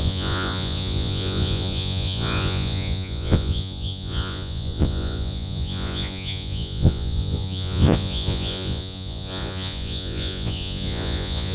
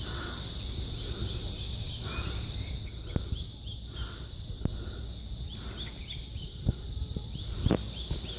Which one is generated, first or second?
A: first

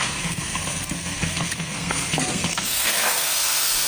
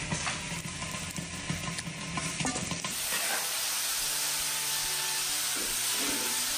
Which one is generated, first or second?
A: first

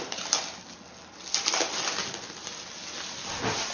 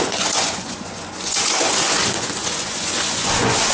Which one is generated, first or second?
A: second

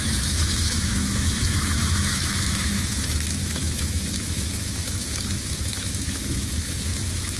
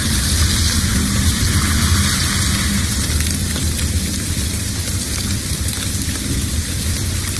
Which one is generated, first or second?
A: first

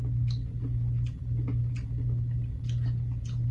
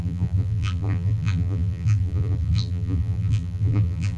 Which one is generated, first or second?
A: second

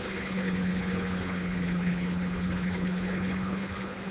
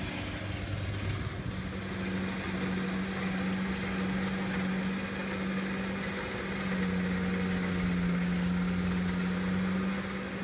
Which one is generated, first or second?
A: first